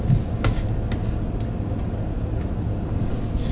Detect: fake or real real